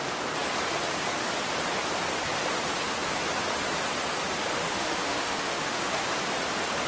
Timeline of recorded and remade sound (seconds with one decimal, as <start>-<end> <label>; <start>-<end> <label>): 0.0-4.5 recorded; 4.5-6.0 remade; 6.0-6.9 recorded